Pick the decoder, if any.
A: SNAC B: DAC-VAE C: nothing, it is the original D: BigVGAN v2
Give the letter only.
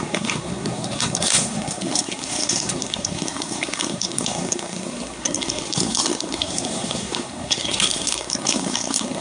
A